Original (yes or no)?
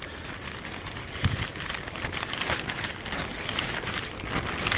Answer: yes